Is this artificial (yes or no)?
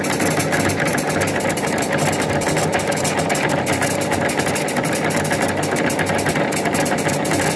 no